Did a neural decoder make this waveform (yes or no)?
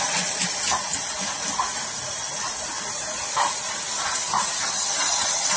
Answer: no